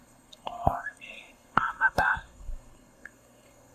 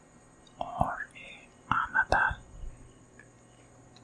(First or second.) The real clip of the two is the second